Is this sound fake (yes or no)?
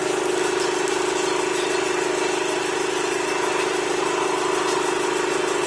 no